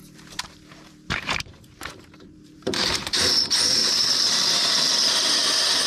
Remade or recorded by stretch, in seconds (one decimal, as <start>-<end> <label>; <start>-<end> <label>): 0.0-3.2 remade; 3.2-3.8 recorded; 3.8-4.7 remade; 4.7-5.4 recorded; 5.4-5.9 remade